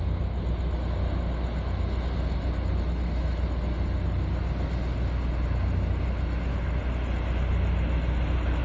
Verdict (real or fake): real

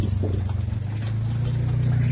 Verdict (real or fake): real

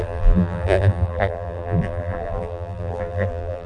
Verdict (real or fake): fake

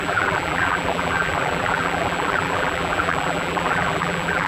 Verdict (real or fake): fake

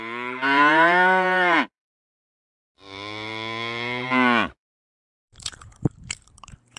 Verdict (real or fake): fake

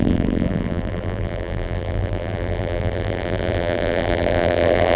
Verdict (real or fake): fake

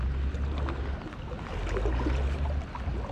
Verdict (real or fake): real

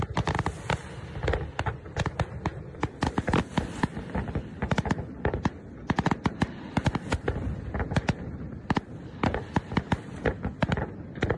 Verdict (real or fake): fake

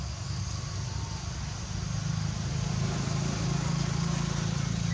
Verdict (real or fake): real